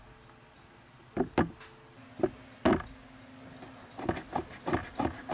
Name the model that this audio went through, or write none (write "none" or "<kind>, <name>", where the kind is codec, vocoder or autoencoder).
none